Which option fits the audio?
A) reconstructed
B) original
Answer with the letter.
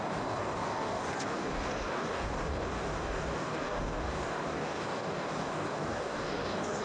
A